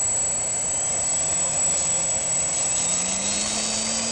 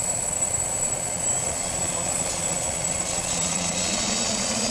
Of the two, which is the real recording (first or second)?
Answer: first